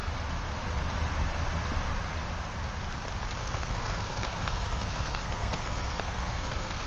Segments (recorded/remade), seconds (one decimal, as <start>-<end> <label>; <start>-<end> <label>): 0.0-3.4 recorded; 3.4-6.9 remade